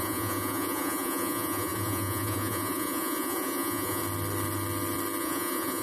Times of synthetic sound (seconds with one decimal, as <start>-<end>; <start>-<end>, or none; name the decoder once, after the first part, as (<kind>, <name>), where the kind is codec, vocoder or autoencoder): 0.0-4.0 (vocoder, Vocos); 5.2-5.8